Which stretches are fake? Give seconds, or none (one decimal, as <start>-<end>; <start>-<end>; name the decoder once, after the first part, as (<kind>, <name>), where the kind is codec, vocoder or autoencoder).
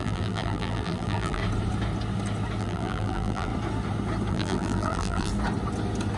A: 0.0-1.4 (vocoder, BigVGAN v2); 2.6-3.5; 4.3-5.3